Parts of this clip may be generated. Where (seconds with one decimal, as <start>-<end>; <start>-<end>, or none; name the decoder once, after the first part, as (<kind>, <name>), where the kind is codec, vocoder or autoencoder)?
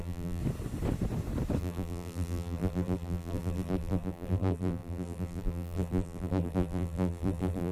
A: 0.0-0.4 (vocoder, BigVGAN v2); 1.6-7.7